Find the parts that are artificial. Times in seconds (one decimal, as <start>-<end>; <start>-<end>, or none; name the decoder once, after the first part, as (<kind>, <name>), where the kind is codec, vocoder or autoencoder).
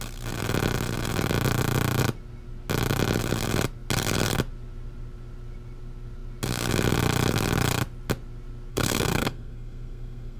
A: 8.7-10.4 (codec, SNAC)